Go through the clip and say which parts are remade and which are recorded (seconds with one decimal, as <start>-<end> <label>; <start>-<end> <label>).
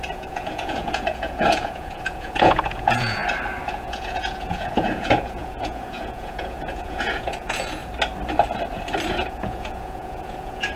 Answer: 0.0-3.2 remade; 3.2-3.7 recorded; 3.7-7.8 remade; 7.8-9.1 recorded; 9.1-10.8 remade